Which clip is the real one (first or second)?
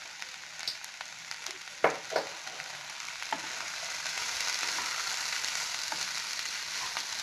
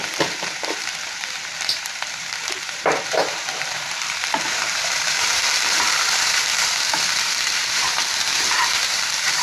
first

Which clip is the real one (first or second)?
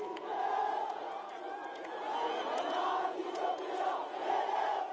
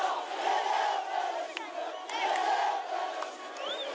second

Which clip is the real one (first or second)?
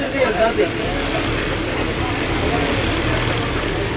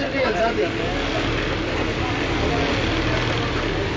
second